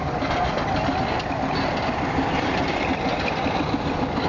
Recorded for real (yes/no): yes